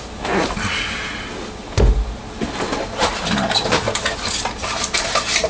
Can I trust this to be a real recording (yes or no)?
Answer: yes